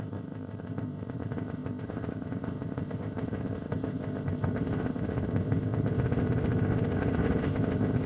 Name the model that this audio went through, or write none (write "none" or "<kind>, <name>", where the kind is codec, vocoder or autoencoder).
codec, ZipCodec